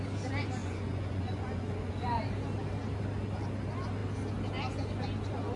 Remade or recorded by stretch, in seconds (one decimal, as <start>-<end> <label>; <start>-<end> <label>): 0.0-0.6 recorded; 0.6-2.2 remade; 2.2-5.6 recorded

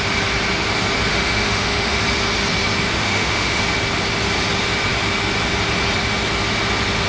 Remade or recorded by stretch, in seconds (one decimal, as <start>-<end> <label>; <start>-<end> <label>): 0.0-1.1 recorded; 1.1-2.0 remade; 2.0-2.9 recorded; 2.9-3.6 remade; 3.6-7.1 recorded

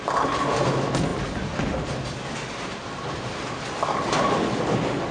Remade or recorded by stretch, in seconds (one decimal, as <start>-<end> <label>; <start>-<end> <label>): 0.0-5.1 recorded